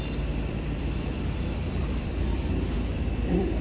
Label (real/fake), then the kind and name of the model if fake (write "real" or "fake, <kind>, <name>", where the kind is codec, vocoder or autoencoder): fake, vocoder, BigVGAN v2